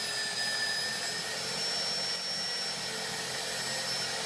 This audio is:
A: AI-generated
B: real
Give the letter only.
B